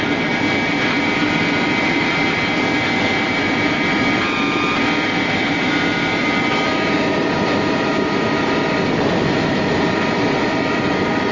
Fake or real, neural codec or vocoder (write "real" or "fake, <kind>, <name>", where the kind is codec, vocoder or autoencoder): fake, vocoder, BigVGAN v2